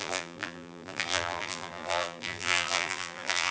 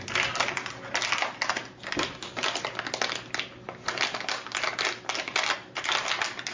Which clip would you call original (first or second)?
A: second